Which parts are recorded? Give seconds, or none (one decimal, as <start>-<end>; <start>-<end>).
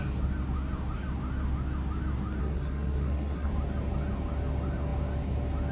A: 0.0-2.4; 3.5-5.7